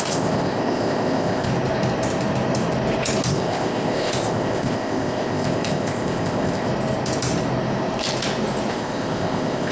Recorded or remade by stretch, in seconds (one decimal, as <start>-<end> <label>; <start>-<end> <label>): 0.0-1.5 remade; 1.5-3.3 recorded; 3.3-6.7 remade; 6.7-8.7 recorded; 8.7-9.7 remade